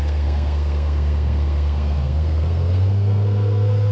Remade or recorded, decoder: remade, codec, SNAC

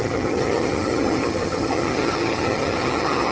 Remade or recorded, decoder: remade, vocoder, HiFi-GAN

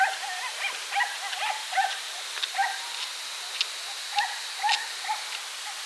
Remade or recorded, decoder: recorded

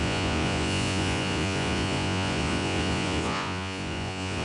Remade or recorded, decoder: remade, vocoder, Vocos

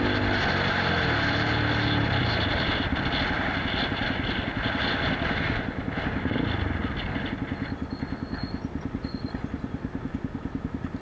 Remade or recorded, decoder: recorded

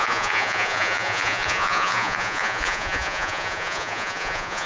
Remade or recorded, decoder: remade, vocoder, Vocos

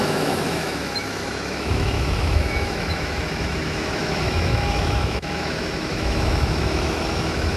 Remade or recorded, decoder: remade, autoencoder, DAC-VAE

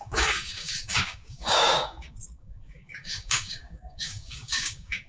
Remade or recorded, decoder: remade, codec, DAC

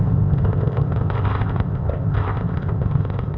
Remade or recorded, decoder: remade, codec, ZipCodec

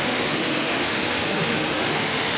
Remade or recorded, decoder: remade, autoencoder, DAC-VAE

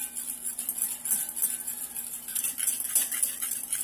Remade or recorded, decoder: recorded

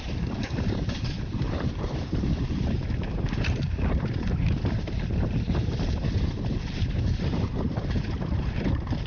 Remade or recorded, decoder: remade, vocoder, BigVGAN v2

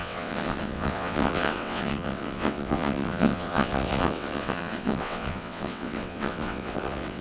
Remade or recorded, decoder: remade, vocoder, WaveNeXt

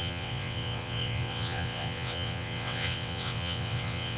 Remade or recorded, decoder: remade, vocoder, WaveNeXt